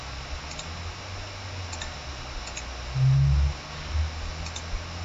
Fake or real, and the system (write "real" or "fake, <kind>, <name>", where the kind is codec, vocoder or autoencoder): real